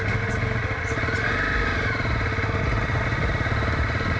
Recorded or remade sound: recorded